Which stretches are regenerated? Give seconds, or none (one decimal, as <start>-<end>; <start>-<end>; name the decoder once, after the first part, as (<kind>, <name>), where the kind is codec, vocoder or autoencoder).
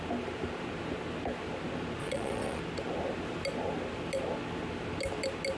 2.0-2.6 (vocoder, Vocos)